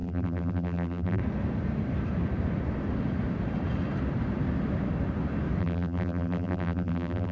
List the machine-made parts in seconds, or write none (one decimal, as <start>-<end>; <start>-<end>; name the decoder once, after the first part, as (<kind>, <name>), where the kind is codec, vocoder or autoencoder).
0.0-1.2 (vocoder, BigVGAN v2); 5.6-7.3